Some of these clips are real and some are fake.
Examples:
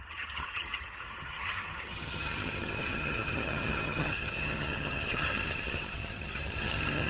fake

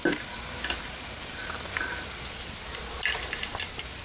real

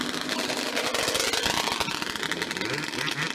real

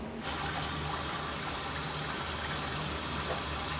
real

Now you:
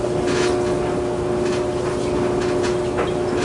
real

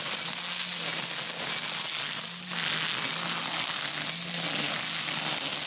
real